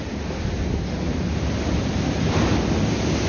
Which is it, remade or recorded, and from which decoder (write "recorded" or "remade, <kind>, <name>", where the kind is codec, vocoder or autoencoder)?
recorded